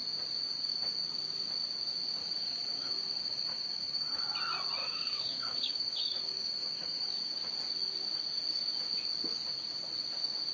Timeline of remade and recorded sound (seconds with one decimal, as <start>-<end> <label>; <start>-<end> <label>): 0.0-2.2 recorded; 2.2-4.2 remade; 4.2-4.8 recorded; 4.8-7.3 remade; 7.3-10.5 recorded